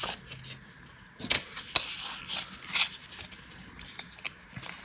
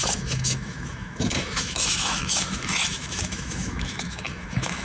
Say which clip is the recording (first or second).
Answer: first